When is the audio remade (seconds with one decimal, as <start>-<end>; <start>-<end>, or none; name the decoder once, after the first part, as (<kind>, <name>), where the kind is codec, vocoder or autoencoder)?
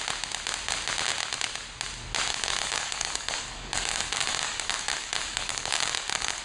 2.3-6.4 (codec, DAC)